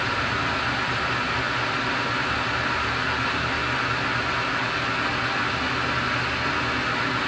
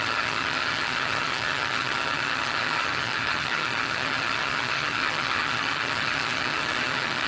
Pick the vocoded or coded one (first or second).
second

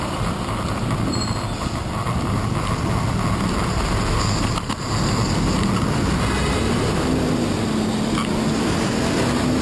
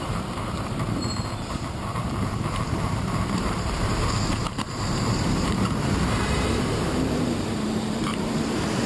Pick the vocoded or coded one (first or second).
second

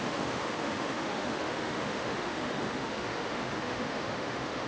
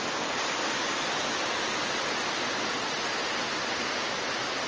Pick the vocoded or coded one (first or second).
first